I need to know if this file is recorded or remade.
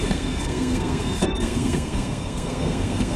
remade